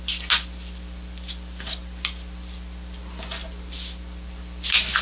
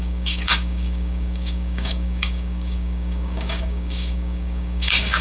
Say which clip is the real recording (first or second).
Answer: first